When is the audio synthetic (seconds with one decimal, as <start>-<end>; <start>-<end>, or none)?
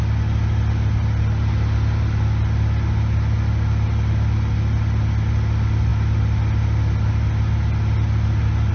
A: none